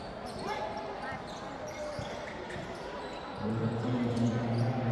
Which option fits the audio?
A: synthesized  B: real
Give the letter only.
A